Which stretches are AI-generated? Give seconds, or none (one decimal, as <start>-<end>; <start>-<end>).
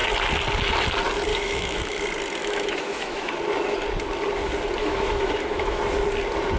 1.3-2.0; 2.4-3.3; 4.8-5.8